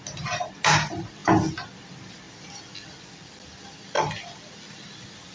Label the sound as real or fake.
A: real